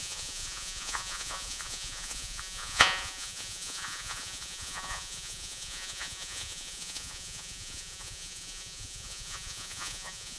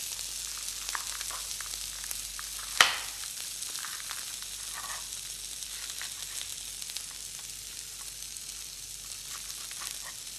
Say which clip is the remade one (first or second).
first